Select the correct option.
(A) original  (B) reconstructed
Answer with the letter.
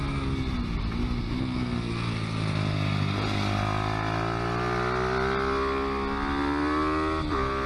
A